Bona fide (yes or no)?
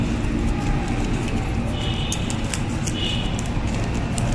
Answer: yes